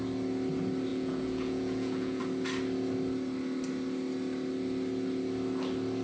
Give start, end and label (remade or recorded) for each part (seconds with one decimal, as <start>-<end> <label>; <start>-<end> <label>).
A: 0.0-0.9 recorded; 0.9-2.2 remade; 2.2-6.0 recorded